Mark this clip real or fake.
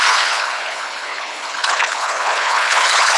fake